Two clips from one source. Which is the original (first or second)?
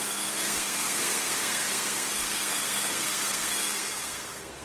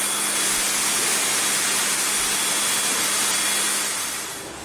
second